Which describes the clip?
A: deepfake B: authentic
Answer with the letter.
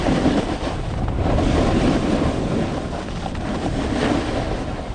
B